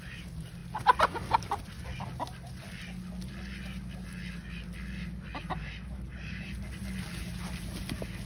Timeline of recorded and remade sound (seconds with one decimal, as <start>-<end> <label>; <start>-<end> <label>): 0.0-0.6 remade; 0.6-5.4 recorded; 5.4-6.8 remade; 6.8-8.3 recorded